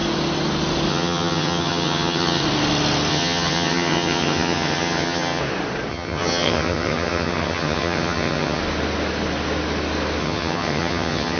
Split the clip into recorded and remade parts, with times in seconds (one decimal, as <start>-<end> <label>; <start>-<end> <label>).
0.0-0.9 recorded; 0.9-2.4 remade; 2.4-3.1 recorded; 3.1-5.4 remade; 5.4-5.9 recorded; 5.9-8.6 remade; 8.6-10.2 recorded; 10.2-11.4 remade